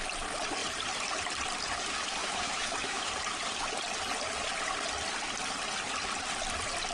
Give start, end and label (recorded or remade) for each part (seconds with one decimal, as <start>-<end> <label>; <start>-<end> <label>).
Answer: 0.0-2.2 recorded; 2.2-3.1 remade; 3.1-6.9 recorded